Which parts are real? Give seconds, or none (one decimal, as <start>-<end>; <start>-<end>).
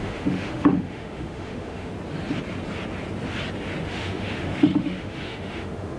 1.9-3.8